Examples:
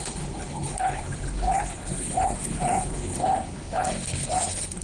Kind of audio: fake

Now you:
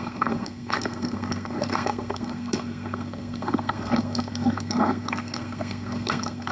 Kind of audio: fake